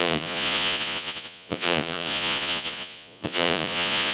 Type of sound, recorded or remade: remade